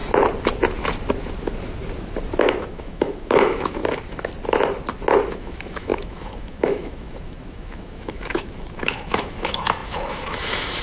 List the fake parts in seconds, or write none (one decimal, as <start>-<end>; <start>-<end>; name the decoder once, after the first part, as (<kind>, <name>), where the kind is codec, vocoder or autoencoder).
2.4-3.8 (autoencoder, DAC-VAE); 5.3-10.8